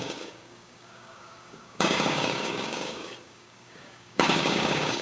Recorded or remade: remade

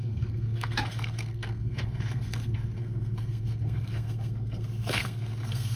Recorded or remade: remade